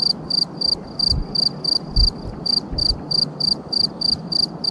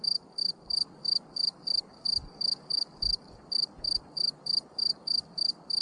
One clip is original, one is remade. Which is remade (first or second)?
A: second